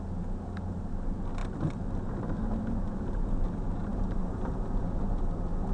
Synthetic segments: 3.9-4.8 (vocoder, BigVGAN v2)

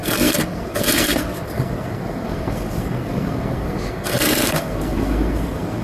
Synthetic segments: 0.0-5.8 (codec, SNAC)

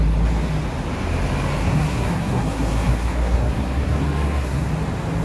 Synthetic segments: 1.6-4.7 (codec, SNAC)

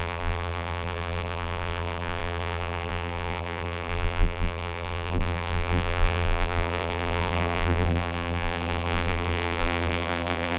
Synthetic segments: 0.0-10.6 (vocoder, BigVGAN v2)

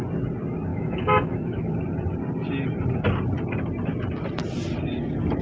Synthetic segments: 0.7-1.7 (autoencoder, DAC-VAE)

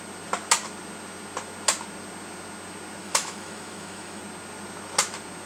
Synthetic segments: 3.0-4.2 (autoencoder, DAC-VAE)

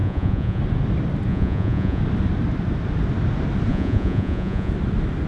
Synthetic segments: 0.0-0.6 (vocoder, Vocos); 1.3-2.0; 3.7-4.7

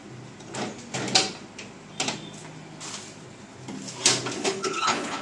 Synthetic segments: 4.4-5.2 (codec, HILCodec)